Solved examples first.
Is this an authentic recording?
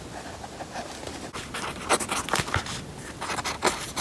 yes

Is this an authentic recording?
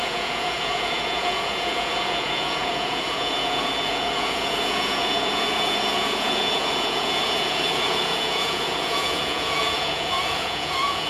no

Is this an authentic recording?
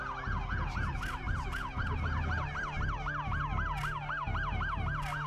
yes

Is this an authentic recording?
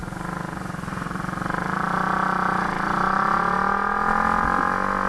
yes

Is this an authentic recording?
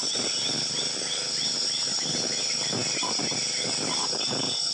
yes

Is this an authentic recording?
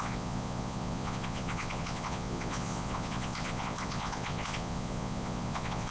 no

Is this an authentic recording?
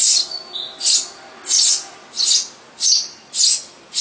yes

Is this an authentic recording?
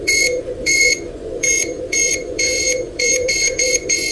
no